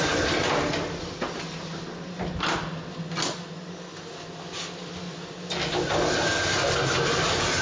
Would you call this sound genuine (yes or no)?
yes